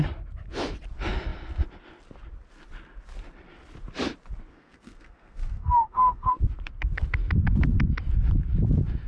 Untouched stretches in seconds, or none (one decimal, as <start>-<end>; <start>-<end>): 0.0-4.5; 6.3-9.1

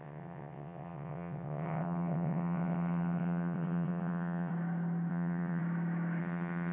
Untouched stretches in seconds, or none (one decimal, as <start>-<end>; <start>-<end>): 4.5-5.1; 5.6-6.2

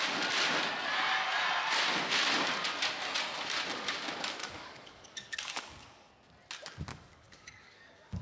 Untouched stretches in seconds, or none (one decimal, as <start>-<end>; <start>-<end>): 0.0-4.4; 6.1-6.9

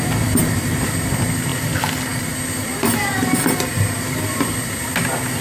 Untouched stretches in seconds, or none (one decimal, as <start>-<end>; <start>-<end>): 0.0-5.4